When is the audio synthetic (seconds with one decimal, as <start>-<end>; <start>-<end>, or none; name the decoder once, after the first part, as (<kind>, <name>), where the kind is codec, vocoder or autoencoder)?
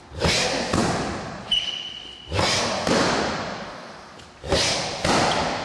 none